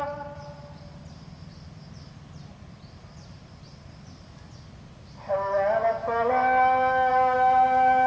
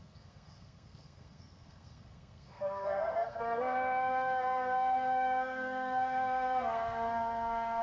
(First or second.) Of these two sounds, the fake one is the second